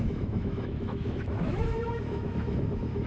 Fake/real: fake